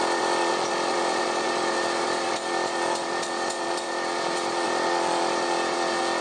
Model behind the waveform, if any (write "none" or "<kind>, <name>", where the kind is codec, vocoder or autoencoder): vocoder, Vocos